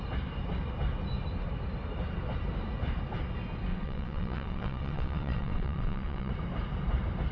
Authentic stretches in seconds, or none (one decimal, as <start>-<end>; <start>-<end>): 0.0-3.7; 6.3-7.3